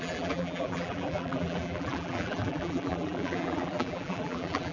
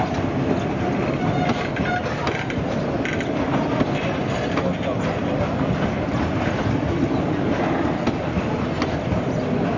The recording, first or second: second